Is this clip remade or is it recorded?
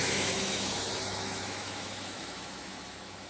remade